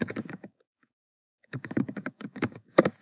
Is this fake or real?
fake